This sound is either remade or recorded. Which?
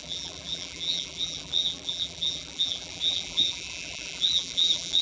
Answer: remade